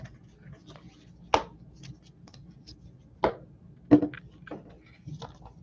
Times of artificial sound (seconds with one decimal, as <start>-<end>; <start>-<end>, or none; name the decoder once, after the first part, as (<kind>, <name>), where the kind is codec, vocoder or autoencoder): none